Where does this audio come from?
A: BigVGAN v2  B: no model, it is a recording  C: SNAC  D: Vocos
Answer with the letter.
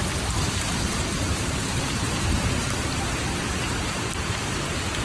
A